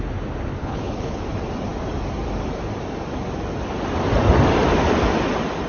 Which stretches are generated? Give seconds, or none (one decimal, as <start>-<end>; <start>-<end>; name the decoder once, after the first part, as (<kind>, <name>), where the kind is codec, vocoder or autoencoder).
0.6-1.2 (codec, HILCodec)